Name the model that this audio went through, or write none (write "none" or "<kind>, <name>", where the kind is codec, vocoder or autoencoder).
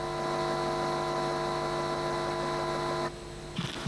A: none